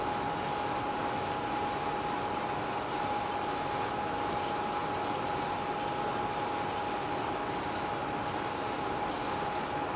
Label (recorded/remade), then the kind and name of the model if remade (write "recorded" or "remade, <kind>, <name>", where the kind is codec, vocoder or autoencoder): recorded